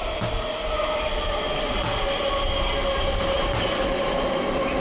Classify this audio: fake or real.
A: real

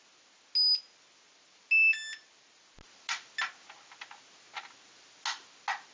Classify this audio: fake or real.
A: real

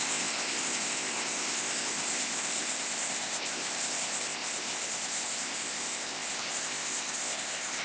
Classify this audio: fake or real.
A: fake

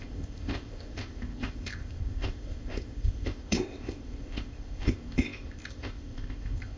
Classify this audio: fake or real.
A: fake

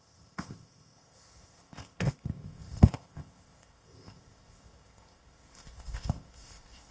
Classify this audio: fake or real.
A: fake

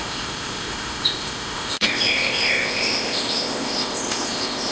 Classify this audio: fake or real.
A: fake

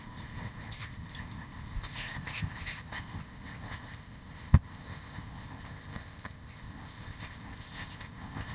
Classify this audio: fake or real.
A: fake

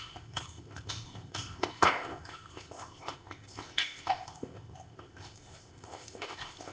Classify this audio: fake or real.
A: fake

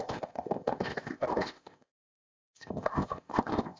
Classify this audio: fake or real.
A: fake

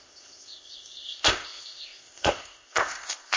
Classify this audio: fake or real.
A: fake